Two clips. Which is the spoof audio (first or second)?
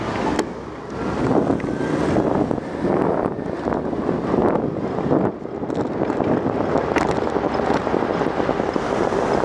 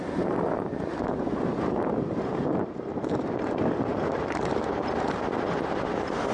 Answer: second